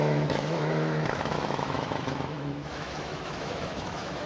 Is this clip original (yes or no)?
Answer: no